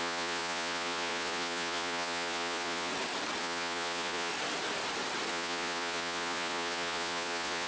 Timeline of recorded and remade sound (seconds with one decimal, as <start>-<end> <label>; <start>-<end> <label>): 0.0-2.9 remade; 2.9-3.4 recorded; 3.4-4.3 remade; 4.3-5.3 recorded; 5.3-7.7 remade